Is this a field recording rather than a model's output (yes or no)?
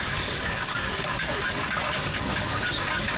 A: no